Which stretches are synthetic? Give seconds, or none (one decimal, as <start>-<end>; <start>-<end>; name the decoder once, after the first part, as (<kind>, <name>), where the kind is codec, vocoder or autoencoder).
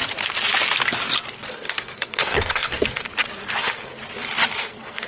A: 1.5-3.1 (codec, SNAC); 3.6-4.0; 4.6-5.1